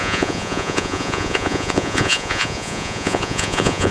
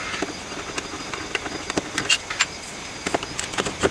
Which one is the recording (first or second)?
second